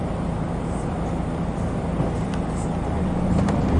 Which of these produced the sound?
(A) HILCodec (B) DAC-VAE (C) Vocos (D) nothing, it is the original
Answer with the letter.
D